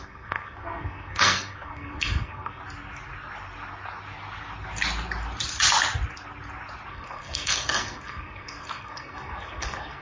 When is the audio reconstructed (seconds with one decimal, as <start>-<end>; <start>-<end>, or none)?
0.0-2.6; 6.9-10.0